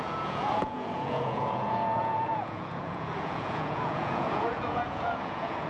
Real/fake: fake